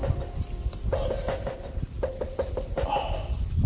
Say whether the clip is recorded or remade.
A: recorded